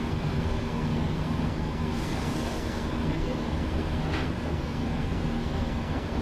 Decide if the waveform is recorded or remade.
remade